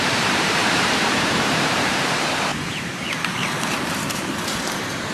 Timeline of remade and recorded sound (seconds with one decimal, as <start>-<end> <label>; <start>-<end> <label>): 0.0-2.5 remade; 2.5-3.7 recorded; 3.7-5.1 remade

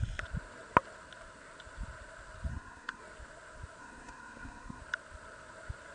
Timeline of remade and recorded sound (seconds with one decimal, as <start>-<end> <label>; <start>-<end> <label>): 0.0-2.5 recorded; 2.5-3.0 remade; 3.0-3.8 recorded; 3.8-4.8 remade; 4.8-5.9 recorded

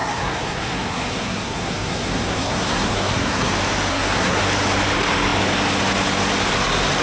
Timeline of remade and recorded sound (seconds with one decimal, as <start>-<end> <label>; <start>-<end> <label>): 0.0-3.5 remade; 3.5-3.9 recorded; 3.9-4.4 remade; 4.4-7.0 recorded

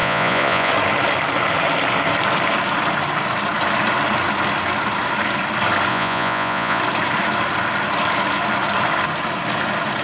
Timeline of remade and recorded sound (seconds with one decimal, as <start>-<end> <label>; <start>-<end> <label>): 0.0-0.7 remade; 0.7-5.9 recorded; 5.9-6.8 remade; 6.8-10.0 recorded